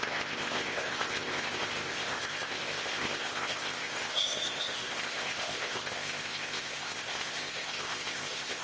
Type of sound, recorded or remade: remade